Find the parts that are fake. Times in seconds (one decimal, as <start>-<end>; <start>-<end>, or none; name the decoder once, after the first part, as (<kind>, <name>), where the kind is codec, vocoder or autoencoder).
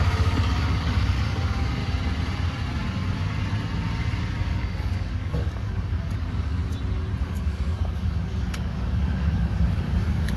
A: 0.0-1.8 (codec, DAC); 4.4-6.6; 7.2-10.4